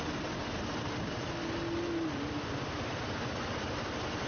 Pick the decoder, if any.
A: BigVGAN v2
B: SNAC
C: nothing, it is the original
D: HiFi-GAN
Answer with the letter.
C